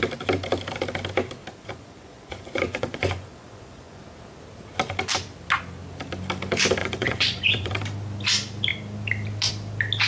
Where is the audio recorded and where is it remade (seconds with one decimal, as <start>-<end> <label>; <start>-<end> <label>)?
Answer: 0.0-1.5 recorded; 1.5-4.0 remade; 4.0-6.8 recorded; 6.8-7.7 remade; 7.7-10.1 recorded